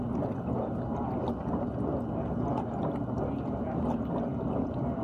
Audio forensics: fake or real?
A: real